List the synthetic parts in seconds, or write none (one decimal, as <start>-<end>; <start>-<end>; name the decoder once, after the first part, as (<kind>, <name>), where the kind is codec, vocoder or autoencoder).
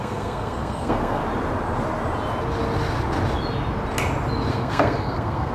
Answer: 0.0-1.2 (codec, SNAC); 4.5-5.5